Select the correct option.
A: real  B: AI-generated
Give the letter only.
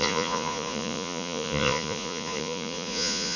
B